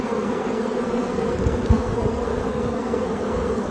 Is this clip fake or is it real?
fake